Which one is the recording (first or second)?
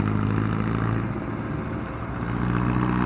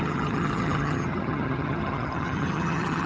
first